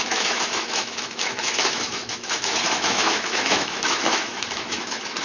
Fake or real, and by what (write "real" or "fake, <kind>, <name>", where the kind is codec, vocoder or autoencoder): fake, autoencoder, DAC-VAE